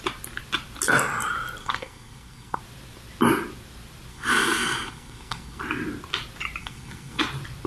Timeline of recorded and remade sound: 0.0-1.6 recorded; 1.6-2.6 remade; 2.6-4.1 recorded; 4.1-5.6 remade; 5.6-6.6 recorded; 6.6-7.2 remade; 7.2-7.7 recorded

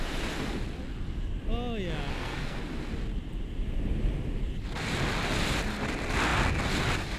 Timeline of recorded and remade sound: 0.0-2.1 recorded; 2.1-2.6 remade; 2.6-7.2 recorded

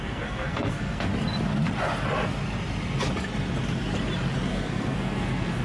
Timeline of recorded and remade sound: 0.0-1.1 remade; 1.1-4.5 recorded; 4.5-5.6 remade